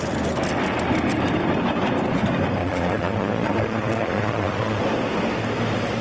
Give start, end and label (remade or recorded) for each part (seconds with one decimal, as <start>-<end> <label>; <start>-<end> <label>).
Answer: 0.0-2.6 recorded; 2.6-4.8 remade; 4.8-6.0 recorded